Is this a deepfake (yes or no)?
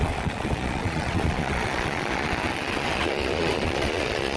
yes